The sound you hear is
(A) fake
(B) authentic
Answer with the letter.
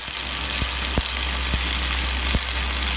B